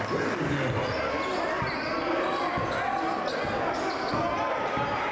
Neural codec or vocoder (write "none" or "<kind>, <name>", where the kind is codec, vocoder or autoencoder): none